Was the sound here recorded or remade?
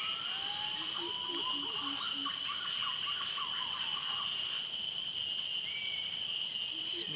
recorded